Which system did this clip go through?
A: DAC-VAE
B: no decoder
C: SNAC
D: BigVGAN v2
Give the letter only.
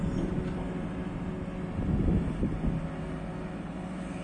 B